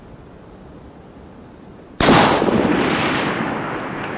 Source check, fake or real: real